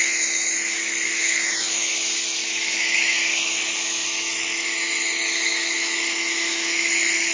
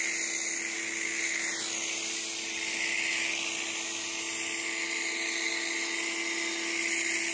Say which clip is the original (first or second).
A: second